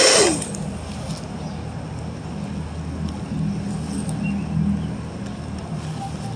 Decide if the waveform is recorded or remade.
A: recorded